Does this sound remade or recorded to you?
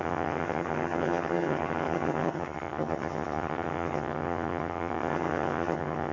remade